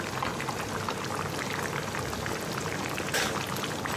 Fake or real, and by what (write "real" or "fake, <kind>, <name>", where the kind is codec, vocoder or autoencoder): real